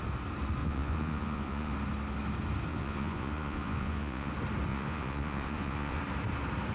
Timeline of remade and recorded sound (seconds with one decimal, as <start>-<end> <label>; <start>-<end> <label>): 0.0-0.6 recorded; 0.6-1.7 remade; 1.7-2.7 recorded; 2.7-4.3 remade; 4.3-4.7 recorded; 4.7-6.0 remade; 6.0-6.7 recorded